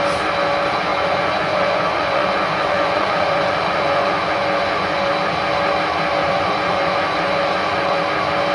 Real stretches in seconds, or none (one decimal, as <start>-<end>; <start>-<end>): 0.0-0.9; 5.1-6.2; 8.0-8.5